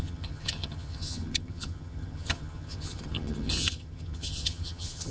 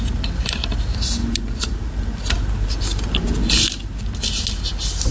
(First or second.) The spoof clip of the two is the first